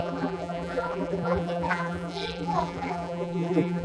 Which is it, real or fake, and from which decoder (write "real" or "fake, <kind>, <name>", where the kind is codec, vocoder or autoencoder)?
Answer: fake, vocoder, BigVGAN v2